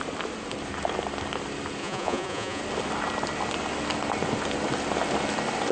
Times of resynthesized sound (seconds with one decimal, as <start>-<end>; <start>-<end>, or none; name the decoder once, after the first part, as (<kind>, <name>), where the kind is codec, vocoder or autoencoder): 1.8-2.6 (vocoder, Vocos)